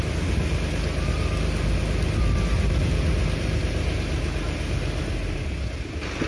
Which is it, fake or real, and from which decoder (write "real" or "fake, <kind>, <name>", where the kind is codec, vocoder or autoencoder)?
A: real